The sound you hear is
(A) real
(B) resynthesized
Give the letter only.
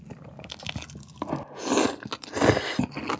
A